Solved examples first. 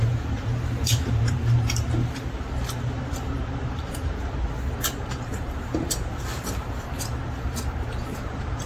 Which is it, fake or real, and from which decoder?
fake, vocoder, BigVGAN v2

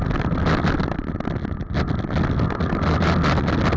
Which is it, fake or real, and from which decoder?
real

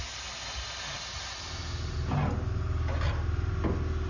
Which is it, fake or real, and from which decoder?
real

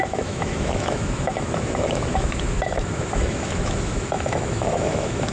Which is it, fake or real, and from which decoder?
fake, autoencoder, DAC-VAE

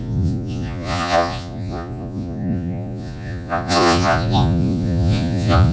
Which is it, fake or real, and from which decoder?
fake, vocoder, Vocos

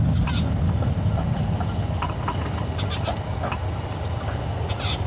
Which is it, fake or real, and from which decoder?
real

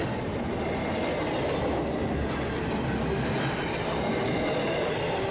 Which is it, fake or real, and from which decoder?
real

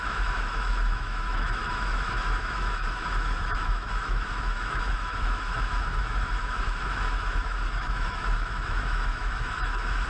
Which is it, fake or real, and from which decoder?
fake, autoencoder, DAC-VAE